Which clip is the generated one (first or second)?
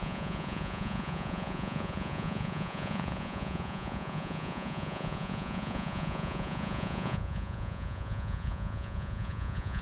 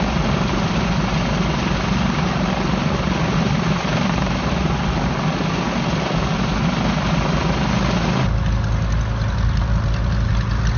first